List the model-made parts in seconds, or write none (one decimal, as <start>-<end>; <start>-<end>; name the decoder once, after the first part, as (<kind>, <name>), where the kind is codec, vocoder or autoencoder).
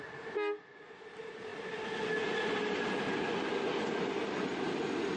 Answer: none